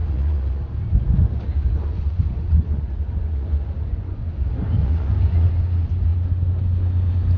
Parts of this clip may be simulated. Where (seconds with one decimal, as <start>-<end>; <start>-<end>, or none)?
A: 0.0-0.6; 1.8-4.3; 4.8-5.5